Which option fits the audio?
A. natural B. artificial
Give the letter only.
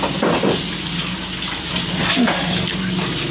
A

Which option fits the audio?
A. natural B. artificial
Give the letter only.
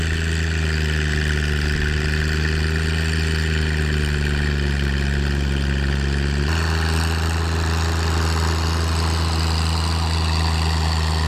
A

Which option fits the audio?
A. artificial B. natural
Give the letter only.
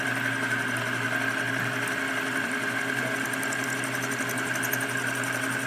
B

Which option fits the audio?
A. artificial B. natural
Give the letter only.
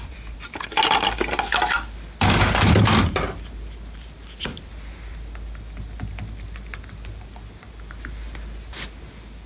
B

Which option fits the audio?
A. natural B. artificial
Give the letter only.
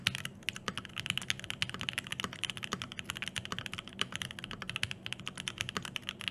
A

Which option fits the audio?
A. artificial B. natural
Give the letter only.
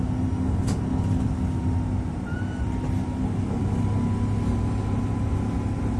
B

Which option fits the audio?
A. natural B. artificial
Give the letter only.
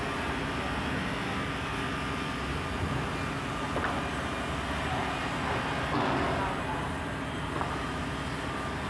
A